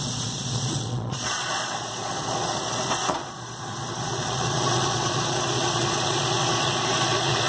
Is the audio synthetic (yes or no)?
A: yes